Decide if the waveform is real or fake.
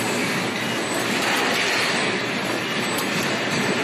real